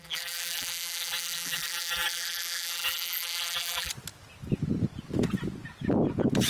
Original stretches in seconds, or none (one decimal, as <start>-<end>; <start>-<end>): 3.9-6.5